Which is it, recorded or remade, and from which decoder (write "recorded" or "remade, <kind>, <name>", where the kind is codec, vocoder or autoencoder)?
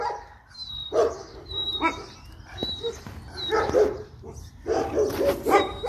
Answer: recorded